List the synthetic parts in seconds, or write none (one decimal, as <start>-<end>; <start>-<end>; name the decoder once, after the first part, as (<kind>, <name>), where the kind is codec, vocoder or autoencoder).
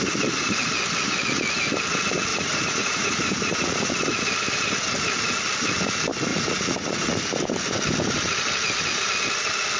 2.3-3.9 (vocoder, Vocos); 6.3-7.2